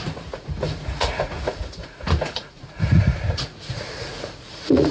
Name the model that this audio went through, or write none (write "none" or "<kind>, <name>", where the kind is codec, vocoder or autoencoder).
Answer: vocoder, Vocos